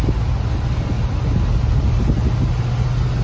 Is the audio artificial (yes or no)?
no